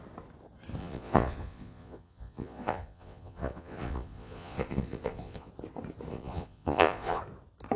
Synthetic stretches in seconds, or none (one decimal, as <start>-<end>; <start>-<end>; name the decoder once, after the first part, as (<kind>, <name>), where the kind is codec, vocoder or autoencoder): 0.8-5.5 (vocoder, Vocos); 6.1-7.2